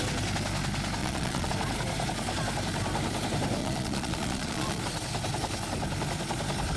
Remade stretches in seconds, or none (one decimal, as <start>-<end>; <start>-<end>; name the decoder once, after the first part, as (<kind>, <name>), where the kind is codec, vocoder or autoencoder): 1.0-1.5 (vocoder, Vocos); 3.6-4.8